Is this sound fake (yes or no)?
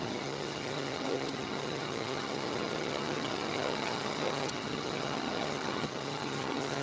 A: yes